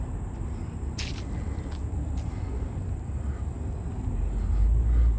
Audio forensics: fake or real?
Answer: real